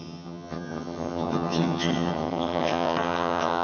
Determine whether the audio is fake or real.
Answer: fake